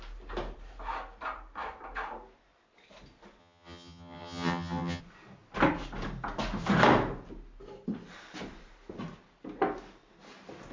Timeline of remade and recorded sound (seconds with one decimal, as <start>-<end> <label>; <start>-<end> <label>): 0.0-3.4 recorded; 3.4-5.0 remade; 5.0-10.7 recorded